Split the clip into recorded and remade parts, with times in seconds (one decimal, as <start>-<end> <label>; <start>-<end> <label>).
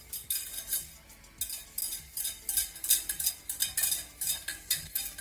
0.0-4.5 recorded; 4.5-5.2 remade